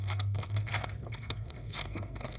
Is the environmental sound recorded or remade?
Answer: remade